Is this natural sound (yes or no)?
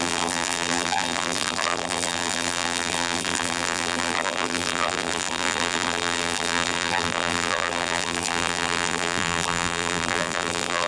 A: no